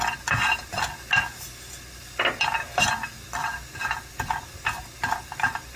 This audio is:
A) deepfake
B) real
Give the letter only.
B